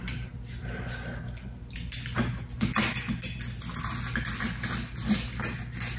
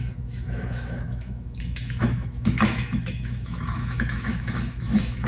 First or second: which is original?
first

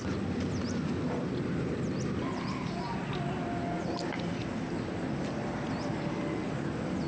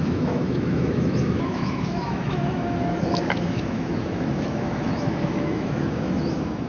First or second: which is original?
first